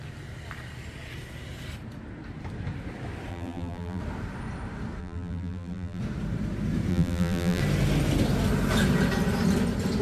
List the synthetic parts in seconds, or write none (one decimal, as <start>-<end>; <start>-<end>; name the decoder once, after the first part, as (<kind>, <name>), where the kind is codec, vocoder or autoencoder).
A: 3.3-4.0 (vocoder, BigVGAN v2); 5.0-6.0; 6.9-7.6